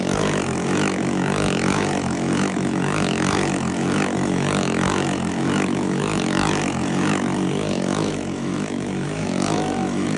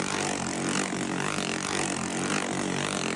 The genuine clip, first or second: second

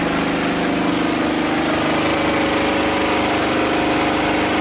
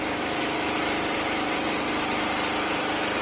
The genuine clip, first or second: first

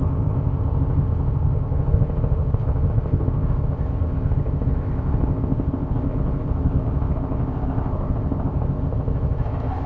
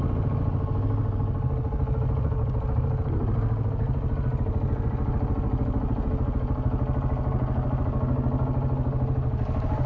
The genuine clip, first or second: second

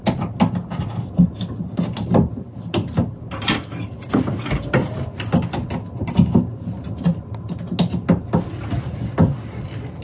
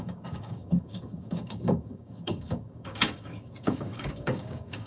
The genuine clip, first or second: first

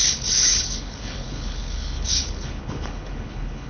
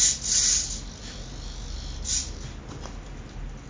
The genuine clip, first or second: second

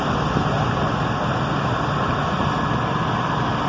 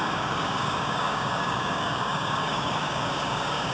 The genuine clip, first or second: first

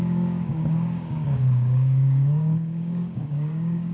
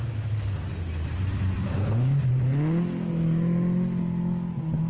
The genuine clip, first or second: second